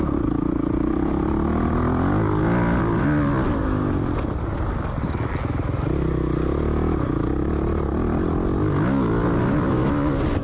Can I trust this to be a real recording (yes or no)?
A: yes